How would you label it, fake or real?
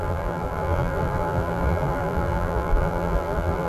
fake